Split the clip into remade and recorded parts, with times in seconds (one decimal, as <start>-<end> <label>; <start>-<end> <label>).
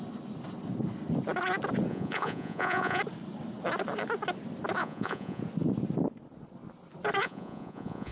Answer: 0.0-1.9 recorded; 1.9-3.0 remade; 3.0-4.8 recorded; 4.8-5.4 remade; 5.4-7.2 recorded; 7.2-8.1 remade